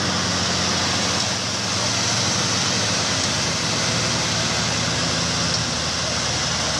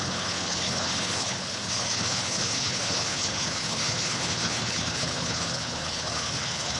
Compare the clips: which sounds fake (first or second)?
second